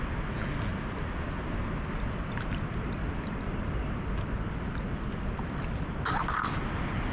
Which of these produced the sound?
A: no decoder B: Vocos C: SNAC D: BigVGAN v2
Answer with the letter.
A